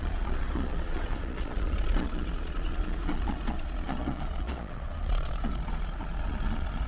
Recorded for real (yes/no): no